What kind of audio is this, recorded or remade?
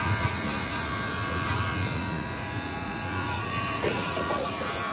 remade